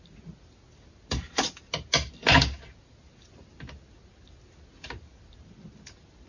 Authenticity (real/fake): real